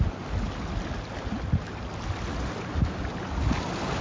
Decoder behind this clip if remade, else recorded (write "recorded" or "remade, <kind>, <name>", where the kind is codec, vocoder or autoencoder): recorded